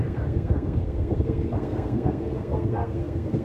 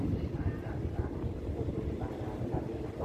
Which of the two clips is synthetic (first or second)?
first